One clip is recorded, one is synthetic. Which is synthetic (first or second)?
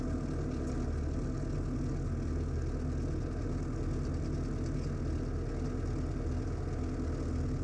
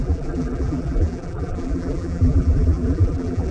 second